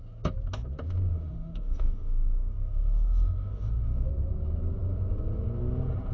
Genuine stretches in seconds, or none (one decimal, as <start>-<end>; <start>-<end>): 0.0-1.1; 4.1-6.1